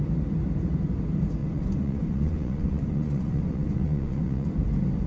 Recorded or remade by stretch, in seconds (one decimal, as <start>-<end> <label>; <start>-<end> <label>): 0.0-1.4 recorded; 1.4-4.5 remade; 4.5-5.1 recorded